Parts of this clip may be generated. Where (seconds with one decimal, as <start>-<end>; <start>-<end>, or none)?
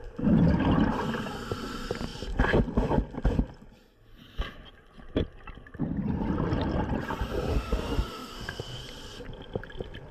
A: 7.5-8.8